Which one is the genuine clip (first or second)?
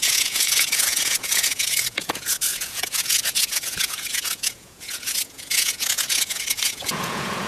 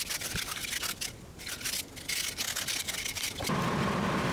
second